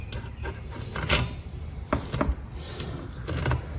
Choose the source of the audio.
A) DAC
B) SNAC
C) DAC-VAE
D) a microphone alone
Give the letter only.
D